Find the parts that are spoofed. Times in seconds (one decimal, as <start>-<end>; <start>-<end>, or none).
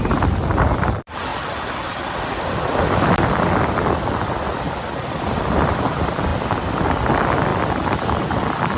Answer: 0.0-8.8